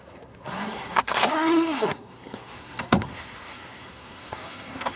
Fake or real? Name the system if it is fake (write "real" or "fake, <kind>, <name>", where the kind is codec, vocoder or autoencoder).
fake, codec, SNAC